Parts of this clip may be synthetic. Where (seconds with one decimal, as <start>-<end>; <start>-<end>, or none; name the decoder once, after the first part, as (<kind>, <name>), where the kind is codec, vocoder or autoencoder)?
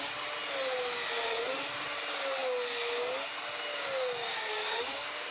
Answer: 3.7-5.3 (codec, DAC)